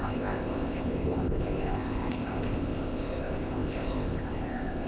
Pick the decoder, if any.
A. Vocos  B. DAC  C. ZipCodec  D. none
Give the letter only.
C